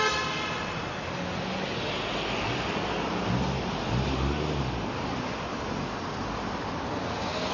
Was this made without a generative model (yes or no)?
yes